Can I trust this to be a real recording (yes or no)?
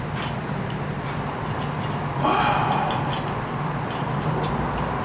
yes